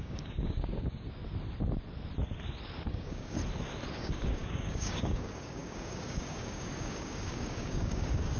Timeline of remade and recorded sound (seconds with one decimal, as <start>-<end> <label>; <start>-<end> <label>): 0.0-1.2 remade; 1.2-2.9 recorded; 2.9-3.4 remade; 3.4-4.0 recorded; 4.0-8.4 remade